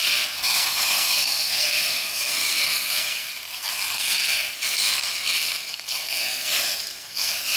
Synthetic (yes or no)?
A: yes